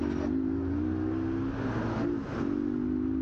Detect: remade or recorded recorded